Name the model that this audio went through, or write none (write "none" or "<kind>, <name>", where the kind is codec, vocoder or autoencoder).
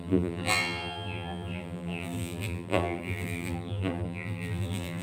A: vocoder, BigVGAN v2